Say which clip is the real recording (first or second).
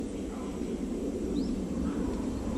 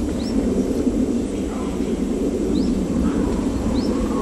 first